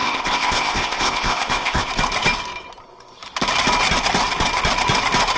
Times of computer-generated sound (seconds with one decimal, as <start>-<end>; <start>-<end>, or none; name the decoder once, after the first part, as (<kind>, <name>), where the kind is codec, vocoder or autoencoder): 0.0-1.9 (codec, ZipCodec)